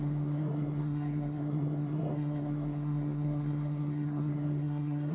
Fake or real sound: fake